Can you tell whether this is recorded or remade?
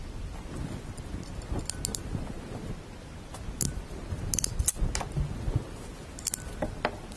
recorded